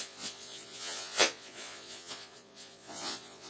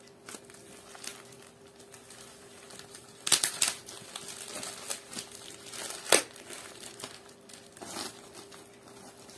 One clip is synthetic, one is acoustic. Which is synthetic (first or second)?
first